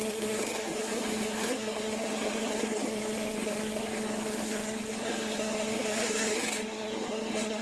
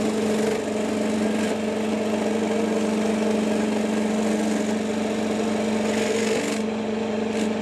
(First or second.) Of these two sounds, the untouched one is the second